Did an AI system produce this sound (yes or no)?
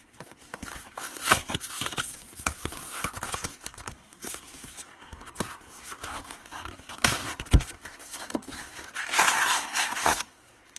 yes